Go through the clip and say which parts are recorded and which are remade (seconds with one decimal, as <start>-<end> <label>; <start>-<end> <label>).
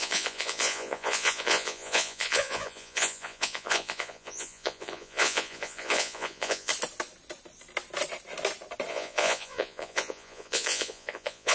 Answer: 0.0-6.7 remade; 6.7-8.9 recorded; 8.9-11.5 remade